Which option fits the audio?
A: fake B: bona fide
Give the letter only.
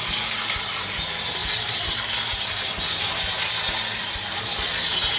B